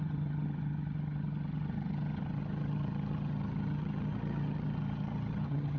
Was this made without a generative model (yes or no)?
no